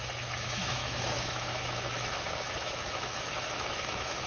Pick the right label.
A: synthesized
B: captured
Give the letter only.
A